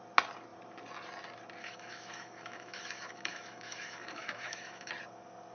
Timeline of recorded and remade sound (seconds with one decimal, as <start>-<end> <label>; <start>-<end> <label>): 0.0-1.6 recorded; 1.6-4.9 remade; 4.9-5.5 recorded

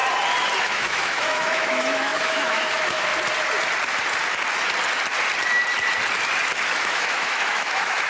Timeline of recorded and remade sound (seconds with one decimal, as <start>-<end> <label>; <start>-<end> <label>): 0.0-0.6 recorded; 0.6-3.1 remade; 3.1-6.8 recorded; 6.8-8.1 remade

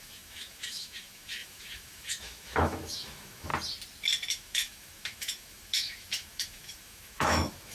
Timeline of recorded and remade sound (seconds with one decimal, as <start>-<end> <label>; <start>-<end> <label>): 0.0-3.5 remade; 3.5-4.3 recorded; 4.3-7.7 remade

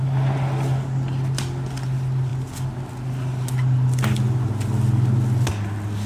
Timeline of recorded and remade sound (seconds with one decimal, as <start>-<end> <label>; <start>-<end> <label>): 0.0-6.1 recorded

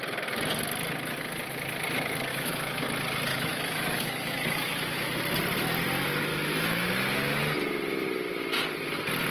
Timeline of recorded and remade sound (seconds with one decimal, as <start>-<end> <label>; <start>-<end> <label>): 0.0-2.3 recorded; 2.3-2.8 remade; 2.8-3.3 recorded; 3.3-5.2 remade; 5.2-6.3 recorded; 6.3-6.9 remade; 6.9-9.3 recorded

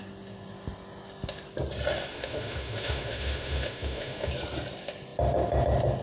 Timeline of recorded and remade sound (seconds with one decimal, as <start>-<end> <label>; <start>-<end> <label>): 0.0-2.1 recorded; 2.1-4.3 remade; 4.3-6.0 recorded

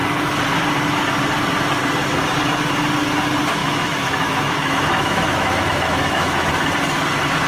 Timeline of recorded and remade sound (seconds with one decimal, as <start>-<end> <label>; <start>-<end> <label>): 0.0-3.6 recorded; 3.6-6.5 remade; 6.5-7.5 recorded